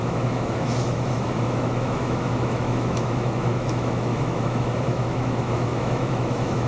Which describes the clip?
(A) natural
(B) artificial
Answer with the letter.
B